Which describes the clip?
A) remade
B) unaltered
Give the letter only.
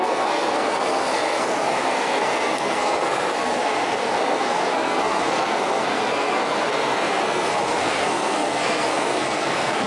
A